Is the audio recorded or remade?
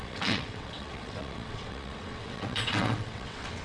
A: remade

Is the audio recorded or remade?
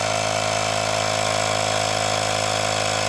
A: recorded